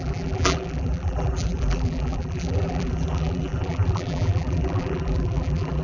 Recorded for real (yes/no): no